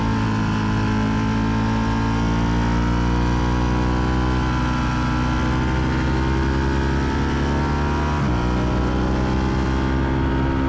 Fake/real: real